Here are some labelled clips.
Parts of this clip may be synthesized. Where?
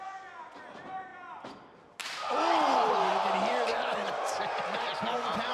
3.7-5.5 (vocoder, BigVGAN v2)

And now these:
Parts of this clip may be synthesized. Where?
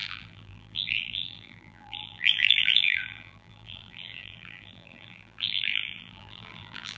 0.0-7.0 (vocoder, BigVGAN v2)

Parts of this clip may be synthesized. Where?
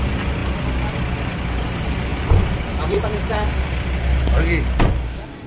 none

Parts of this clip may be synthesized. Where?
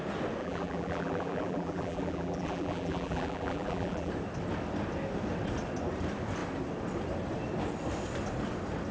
0.4-4.1 (vocoder, BigVGAN v2)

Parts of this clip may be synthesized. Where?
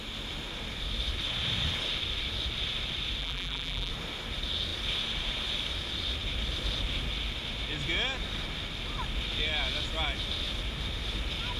3.2-3.9 (vocoder, BigVGAN v2)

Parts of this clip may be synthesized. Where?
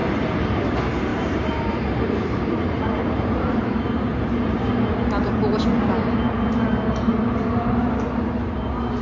0.0-0.6 (vocoder, BigVGAN v2); 1.1-4.7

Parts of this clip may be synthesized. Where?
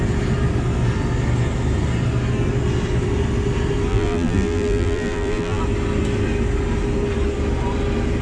3.9-5.6 (vocoder, BigVGAN v2)